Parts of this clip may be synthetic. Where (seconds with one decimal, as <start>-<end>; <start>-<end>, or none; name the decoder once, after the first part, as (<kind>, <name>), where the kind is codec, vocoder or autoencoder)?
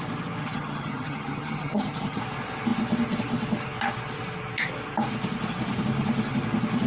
0.4-2.2 (vocoder, HiFi-GAN)